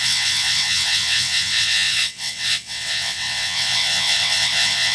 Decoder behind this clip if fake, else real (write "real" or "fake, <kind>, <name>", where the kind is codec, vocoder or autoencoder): fake, vocoder, WaveNeXt